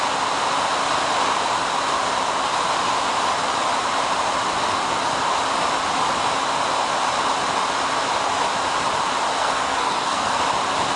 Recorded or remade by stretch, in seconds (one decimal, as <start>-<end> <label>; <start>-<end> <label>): 0.0-9.4 recorded; 9.4-10.4 remade; 10.4-11.0 recorded